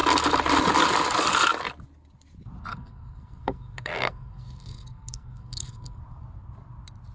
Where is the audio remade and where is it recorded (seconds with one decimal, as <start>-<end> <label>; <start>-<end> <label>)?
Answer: 0.0-2.7 recorded; 2.7-6.0 remade; 6.0-7.1 recorded